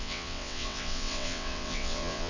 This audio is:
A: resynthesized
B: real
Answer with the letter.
A